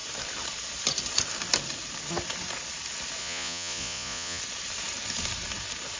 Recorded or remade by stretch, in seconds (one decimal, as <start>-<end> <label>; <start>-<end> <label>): 0.0-3.2 recorded; 3.2-4.4 remade; 4.4-6.0 recorded